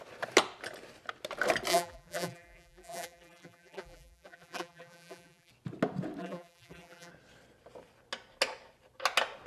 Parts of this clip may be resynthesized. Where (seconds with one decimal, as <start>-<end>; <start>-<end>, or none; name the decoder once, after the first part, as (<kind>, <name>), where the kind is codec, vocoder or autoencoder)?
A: 1.7-5.5 (vocoder, BigVGAN v2); 6.2-7.1